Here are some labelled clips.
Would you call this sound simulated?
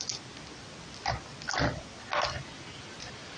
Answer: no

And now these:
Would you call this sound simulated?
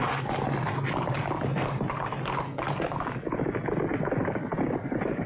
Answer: no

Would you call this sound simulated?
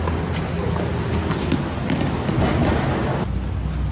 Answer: no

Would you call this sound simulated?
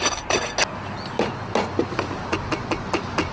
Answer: no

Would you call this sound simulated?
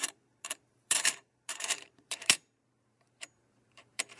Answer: yes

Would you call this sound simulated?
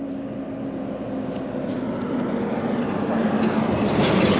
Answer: no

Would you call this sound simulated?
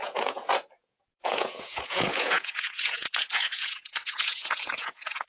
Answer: yes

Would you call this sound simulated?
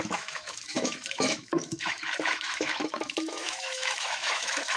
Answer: yes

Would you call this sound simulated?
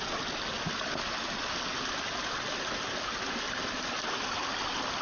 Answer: no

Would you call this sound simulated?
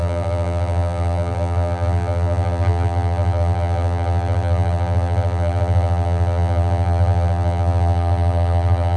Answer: yes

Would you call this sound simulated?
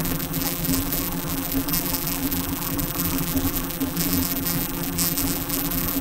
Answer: yes